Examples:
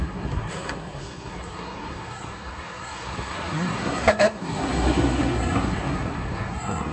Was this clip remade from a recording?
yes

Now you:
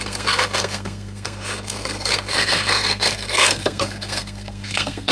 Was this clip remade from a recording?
yes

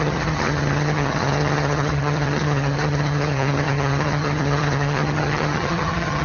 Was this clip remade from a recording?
yes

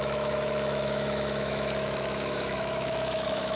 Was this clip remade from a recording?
yes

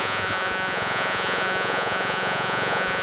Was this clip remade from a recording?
yes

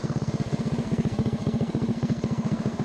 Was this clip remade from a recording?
yes